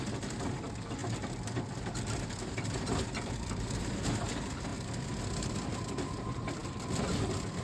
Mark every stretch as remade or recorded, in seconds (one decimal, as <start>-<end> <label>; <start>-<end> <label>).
0.0-7.6 recorded

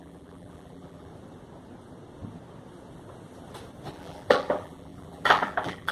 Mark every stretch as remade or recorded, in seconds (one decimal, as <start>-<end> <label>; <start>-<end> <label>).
0.0-1.1 remade; 1.1-3.9 recorded; 3.9-5.9 remade

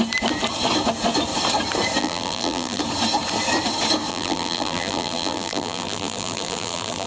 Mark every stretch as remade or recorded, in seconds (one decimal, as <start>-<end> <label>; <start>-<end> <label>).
0.0-2.0 recorded; 2.0-2.8 remade; 2.8-4.1 recorded; 4.1-7.1 remade

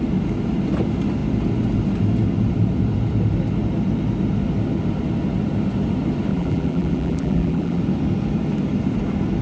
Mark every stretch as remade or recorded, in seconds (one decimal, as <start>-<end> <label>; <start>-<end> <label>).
0.0-6.3 recorded; 6.3-7.8 remade; 7.8-9.4 recorded

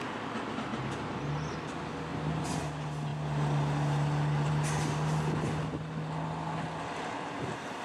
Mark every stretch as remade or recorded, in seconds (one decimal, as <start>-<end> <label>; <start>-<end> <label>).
0.0-0.7 recorded; 0.7-1.2 remade; 1.2-2.1 recorded; 2.1-2.6 remade; 2.6-7.8 recorded

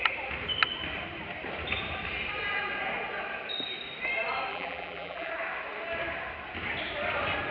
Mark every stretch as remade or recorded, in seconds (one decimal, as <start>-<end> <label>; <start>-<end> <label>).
0.0-4.5 recorded; 4.5-5.3 remade; 5.3-7.5 recorded

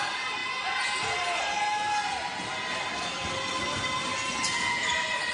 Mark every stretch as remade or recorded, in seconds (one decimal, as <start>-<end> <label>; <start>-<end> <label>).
0.0-0.4 remade; 0.4-3.6 recorded; 3.6-4.1 remade; 4.1-4.7 recorded; 4.7-5.3 remade